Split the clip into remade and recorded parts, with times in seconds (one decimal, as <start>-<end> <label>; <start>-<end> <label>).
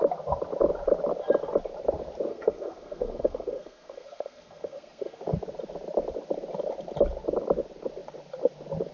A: 0.0-2.3 recorded; 2.3-5.2 remade; 5.2-8.9 recorded